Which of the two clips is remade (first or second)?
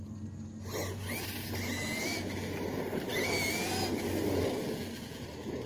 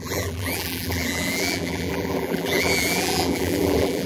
second